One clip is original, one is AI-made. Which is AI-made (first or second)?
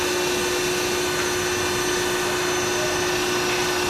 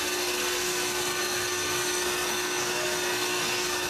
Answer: second